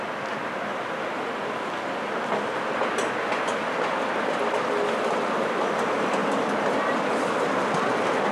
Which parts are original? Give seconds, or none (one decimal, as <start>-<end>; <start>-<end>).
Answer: 0.0-8.3